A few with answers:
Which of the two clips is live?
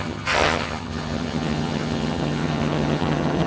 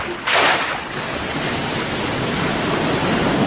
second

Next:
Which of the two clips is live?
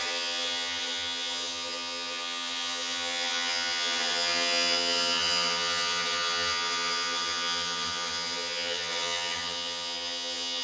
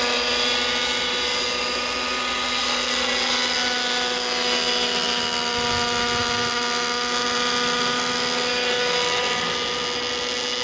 second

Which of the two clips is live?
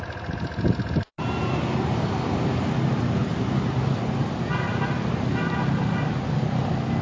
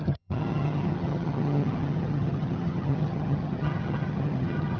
first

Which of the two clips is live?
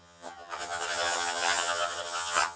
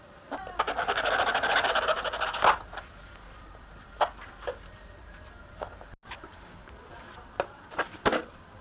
second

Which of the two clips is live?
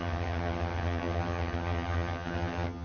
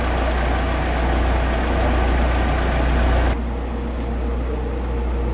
second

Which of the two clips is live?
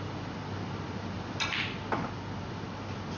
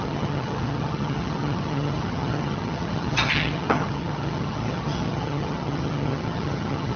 first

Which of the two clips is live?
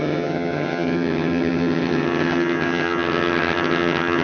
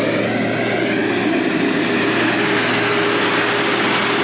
second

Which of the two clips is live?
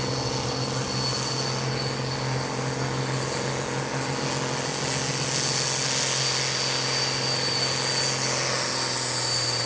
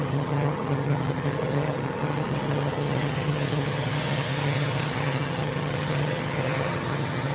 first